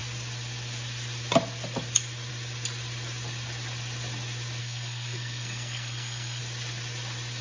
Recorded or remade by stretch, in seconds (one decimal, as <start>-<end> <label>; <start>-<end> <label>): 0.0-4.6 recorded; 4.6-6.4 remade; 6.4-7.4 recorded